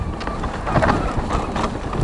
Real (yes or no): yes